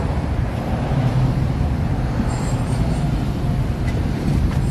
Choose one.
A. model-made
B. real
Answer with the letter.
A